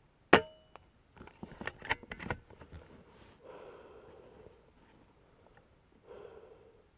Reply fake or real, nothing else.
real